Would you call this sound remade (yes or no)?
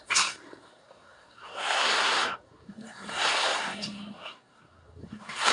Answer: yes